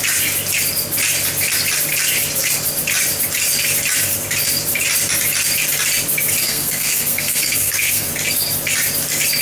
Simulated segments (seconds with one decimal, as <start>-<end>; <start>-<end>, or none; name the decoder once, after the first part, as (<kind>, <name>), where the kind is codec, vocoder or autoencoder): 6.4-8.1 (codec, SNAC)